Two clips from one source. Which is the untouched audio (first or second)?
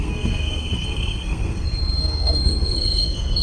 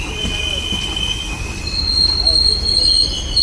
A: second